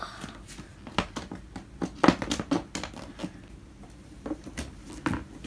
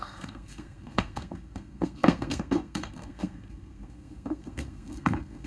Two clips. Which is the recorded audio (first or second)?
first